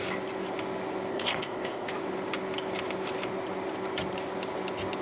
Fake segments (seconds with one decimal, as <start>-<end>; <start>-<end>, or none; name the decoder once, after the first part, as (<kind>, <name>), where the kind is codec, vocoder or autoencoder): 1.1-1.9 (codec, ZipCodec)